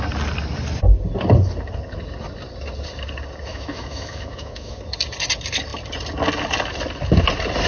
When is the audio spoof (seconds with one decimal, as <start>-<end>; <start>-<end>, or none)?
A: 3.5-4.8